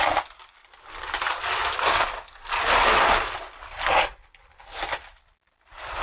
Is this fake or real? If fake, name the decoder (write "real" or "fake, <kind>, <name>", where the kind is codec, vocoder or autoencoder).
real